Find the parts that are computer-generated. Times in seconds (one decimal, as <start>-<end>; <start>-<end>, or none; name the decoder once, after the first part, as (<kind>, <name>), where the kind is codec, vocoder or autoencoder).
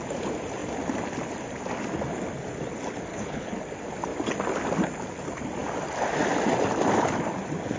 3.1-3.6 (codec, HILCodec)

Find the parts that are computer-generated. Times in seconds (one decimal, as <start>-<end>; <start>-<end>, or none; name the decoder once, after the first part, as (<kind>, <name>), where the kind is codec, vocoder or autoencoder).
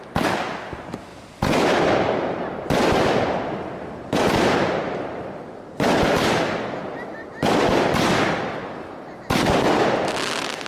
1.1-5.4 (vocoder, BigVGAN v2)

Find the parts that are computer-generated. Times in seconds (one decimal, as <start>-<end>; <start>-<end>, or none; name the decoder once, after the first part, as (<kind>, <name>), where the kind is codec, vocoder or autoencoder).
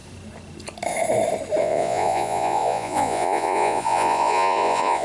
1.6-5.0 (vocoder, Vocos)